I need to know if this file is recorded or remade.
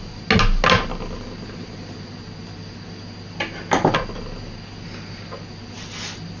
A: recorded